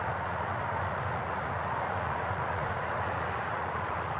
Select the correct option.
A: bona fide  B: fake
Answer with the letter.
B